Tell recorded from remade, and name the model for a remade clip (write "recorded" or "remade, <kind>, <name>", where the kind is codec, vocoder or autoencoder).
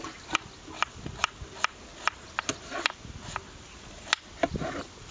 recorded